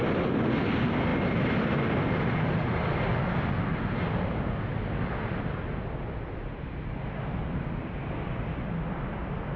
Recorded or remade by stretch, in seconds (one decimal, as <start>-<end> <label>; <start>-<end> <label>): 0.0-9.6 recorded